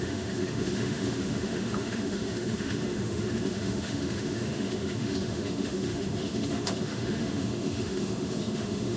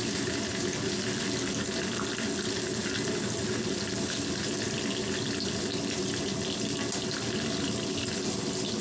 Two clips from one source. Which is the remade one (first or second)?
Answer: first